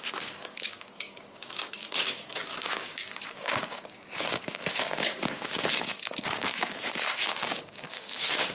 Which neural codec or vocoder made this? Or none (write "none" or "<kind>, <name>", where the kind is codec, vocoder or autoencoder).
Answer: codec, DAC